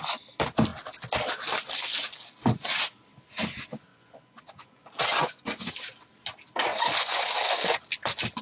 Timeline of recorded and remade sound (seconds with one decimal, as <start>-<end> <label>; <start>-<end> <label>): 0.0-3.9 recorded; 3.9-5.7 remade; 5.7-6.7 recorded; 6.7-7.2 remade; 7.2-8.4 recorded